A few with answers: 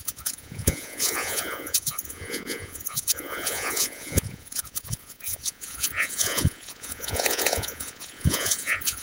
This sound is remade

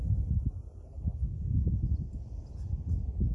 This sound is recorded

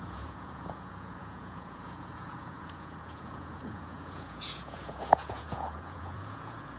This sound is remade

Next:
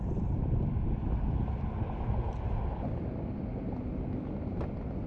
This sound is recorded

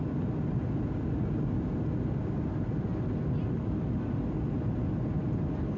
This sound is recorded